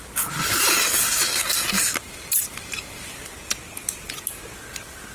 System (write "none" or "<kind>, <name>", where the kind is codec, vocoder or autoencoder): none